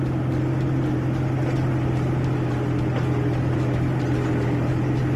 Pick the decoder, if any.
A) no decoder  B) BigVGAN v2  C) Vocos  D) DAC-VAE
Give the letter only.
A